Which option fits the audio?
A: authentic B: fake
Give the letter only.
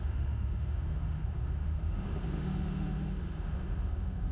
B